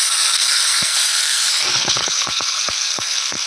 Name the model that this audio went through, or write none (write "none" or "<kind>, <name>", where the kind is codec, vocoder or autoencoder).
codec, SNAC